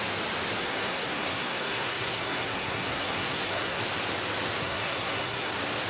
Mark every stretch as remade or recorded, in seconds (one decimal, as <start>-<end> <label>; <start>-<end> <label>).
0.0-0.6 recorded; 0.6-3.8 remade; 3.8-4.6 recorded; 4.6-5.5 remade; 5.5-5.9 recorded